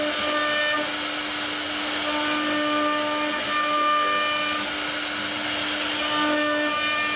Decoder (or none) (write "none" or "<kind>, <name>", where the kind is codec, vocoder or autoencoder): none